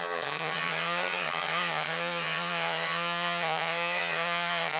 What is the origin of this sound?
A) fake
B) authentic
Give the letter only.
A